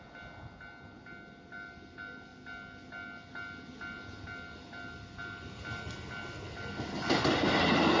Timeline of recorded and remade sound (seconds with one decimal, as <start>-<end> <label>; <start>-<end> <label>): 0.0-8.0 recorded